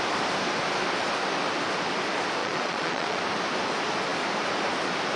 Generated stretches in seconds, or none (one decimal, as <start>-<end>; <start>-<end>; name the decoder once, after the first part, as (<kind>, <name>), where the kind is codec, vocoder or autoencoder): 2.4-3.2 (vocoder, Vocos)